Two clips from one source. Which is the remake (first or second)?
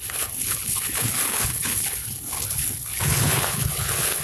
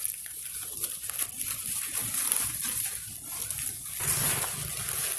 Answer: first